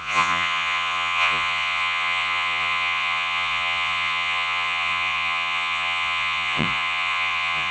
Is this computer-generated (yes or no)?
yes